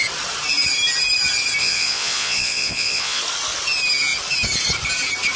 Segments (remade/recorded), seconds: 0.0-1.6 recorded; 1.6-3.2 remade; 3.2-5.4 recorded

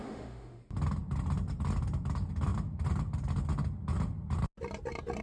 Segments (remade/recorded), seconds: 0.0-0.6 remade; 0.6-5.2 recorded

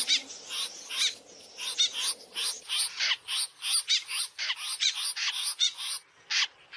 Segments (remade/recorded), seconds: 0.0-4.7 recorded; 4.7-5.9 remade; 5.9-6.8 recorded

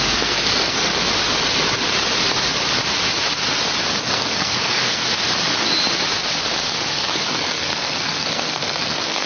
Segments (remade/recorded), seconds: 0.0-0.9 remade; 0.9-4.0 recorded; 4.0-5.0 remade; 5.0-6.9 recorded; 6.9-9.3 remade

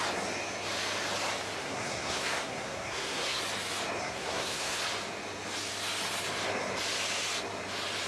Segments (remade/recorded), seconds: 0.0-1.6 recorded; 1.6-3.4 remade; 3.4-4.0 recorded; 4.0-4.8 remade; 4.8-8.1 recorded

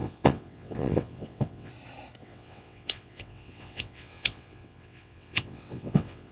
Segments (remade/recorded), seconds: 0.0-1.7 remade; 1.7-2.2 recorded; 2.2-6.3 remade